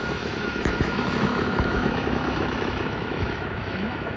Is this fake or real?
fake